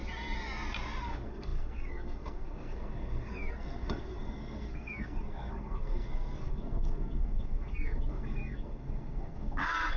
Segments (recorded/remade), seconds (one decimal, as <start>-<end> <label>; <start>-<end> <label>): 0.0-1.0 recorded; 1.0-10.0 remade